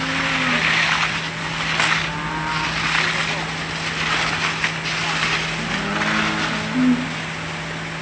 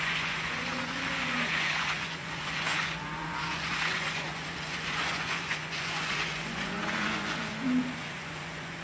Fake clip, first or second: second